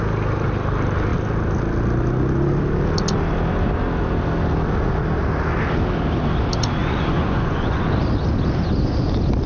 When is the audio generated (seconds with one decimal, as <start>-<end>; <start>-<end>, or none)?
6.8-7.8